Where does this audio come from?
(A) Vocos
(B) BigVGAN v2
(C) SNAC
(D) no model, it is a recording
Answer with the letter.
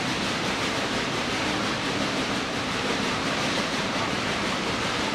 B